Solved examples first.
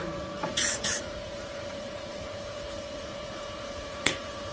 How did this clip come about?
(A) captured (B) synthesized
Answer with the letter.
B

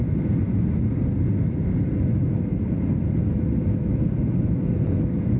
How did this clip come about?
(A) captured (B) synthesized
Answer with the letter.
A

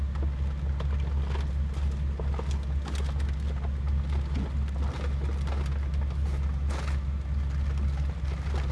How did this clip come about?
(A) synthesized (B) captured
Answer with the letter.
B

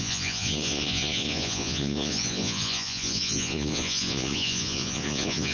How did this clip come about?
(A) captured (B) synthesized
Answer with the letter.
B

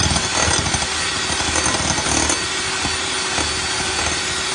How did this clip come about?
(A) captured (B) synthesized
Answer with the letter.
A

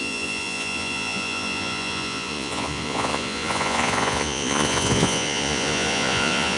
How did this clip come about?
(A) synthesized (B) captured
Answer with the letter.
A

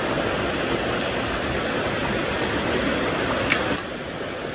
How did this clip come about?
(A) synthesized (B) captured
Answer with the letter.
B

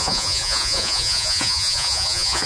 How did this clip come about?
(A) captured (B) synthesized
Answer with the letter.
B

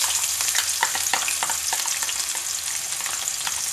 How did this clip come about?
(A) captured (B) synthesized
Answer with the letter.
A